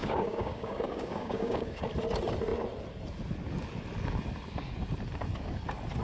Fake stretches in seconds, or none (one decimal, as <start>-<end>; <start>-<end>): 0.0-1.8